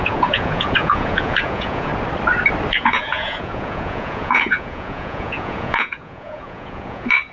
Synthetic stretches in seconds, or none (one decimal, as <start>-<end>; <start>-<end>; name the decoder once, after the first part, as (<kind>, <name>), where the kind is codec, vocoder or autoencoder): 0.0-1.9 (vocoder, Vocos); 2.7-7.3